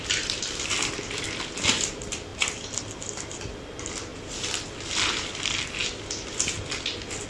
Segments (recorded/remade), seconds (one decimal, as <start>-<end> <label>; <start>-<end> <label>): 0.0-7.3 recorded

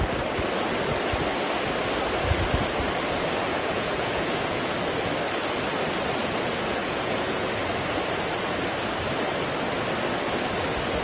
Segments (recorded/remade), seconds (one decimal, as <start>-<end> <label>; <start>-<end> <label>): 0.0-3.5 recorded; 3.5-4.7 remade; 4.7-6.8 recorded; 6.8-7.6 remade; 7.6-11.0 recorded